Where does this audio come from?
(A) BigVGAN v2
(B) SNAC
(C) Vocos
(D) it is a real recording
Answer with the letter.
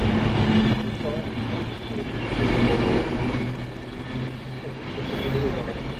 D